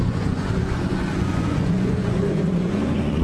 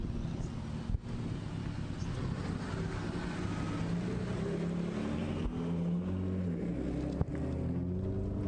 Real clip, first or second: second